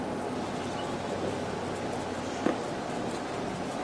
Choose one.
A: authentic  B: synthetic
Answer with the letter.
A